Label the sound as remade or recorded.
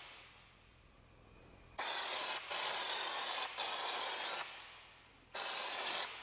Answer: recorded